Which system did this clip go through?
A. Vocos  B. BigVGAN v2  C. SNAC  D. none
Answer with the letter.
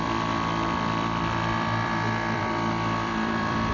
B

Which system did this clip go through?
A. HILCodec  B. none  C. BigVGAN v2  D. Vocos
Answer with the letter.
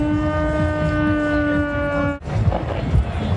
B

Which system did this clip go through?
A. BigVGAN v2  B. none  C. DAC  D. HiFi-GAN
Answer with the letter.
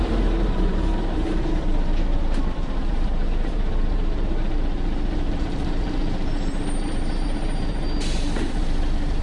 A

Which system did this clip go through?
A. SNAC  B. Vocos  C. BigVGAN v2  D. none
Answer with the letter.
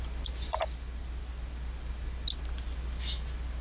D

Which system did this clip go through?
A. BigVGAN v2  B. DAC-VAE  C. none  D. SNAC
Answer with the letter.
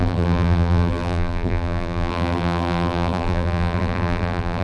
A